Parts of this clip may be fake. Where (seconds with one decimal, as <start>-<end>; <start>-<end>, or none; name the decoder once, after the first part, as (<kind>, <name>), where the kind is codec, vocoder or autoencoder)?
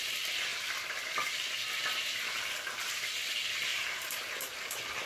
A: 3.7-5.1 (vocoder, BigVGAN v2)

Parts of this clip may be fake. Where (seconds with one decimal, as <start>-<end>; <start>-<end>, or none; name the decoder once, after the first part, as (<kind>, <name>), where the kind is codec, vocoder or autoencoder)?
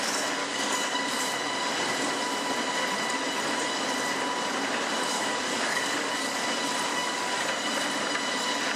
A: 0.4-1.0 (codec, DAC); 5.1-6.4; 6.9-7.4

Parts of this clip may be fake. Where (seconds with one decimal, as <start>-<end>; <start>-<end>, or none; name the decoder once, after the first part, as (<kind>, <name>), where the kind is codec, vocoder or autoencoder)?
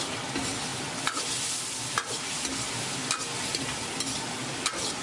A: none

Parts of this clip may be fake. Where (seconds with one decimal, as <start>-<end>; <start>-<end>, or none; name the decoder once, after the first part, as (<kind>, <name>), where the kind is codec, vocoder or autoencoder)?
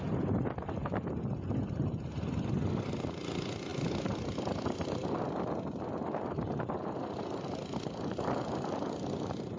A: none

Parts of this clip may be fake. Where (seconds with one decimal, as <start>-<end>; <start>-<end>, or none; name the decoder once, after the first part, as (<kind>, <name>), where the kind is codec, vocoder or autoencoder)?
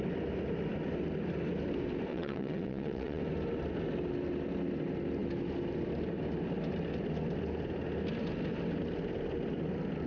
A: 2.1-3.2 (vocoder, WaveNeXt)